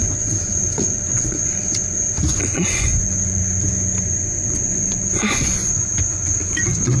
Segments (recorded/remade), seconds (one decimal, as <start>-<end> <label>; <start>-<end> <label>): 0.0-3.4 remade; 3.4-4.0 recorded; 4.0-7.0 remade